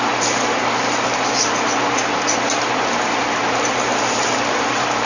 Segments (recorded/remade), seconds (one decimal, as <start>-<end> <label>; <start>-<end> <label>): 0.0-3.9 recorded; 3.9-5.1 remade